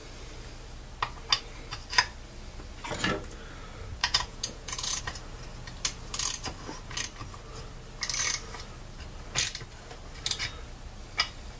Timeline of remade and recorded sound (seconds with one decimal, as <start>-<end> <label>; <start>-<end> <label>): 0.0-4.0 recorded; 4.0-5.0 remade; 5.0-11.6 recorded